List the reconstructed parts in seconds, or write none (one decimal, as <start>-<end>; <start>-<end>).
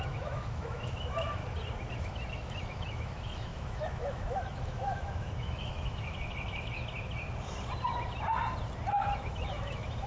0.0-1.4; 1.9-6.8; 8.9-10.1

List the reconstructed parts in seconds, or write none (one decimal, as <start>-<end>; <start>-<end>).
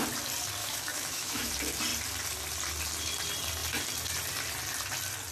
0.6-1.5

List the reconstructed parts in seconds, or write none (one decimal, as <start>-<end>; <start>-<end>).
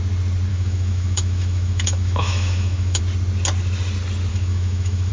0.5-3.0; 4.3-5.1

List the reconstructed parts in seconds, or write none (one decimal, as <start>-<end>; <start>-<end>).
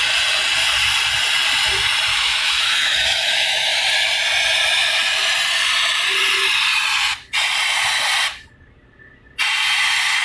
2.1-3.7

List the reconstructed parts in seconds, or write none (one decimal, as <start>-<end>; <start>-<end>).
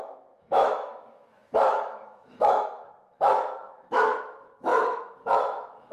0.0-5.9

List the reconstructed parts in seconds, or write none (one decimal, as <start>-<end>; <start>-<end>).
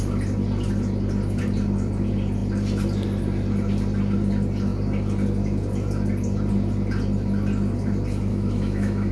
8.3-9.1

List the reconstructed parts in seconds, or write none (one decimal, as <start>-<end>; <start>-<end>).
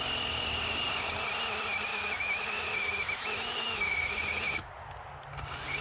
1.9-4.7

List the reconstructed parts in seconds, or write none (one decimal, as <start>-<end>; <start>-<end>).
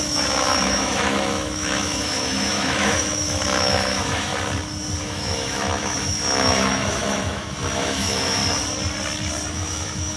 0.0-4.3; 5.0-8.4; 9.5-10.2